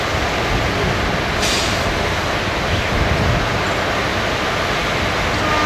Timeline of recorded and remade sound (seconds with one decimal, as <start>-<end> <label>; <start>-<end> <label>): 0.0-5.7 recorded